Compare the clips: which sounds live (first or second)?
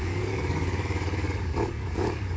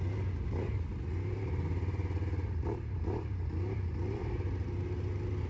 second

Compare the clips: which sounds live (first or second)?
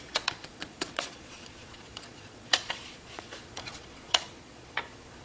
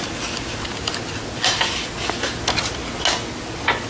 second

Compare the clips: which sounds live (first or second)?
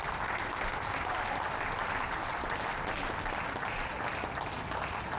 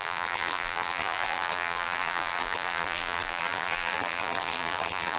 first